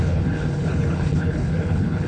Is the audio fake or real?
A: fake